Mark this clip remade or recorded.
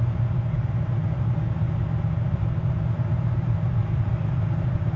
recorded